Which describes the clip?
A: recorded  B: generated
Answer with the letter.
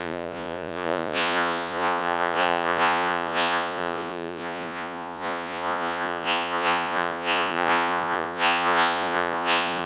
B